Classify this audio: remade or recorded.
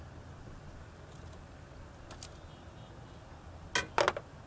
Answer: recorded